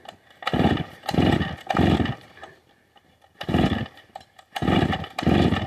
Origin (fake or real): fake